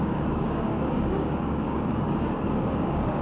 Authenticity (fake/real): fake